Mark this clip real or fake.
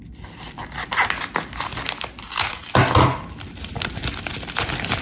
real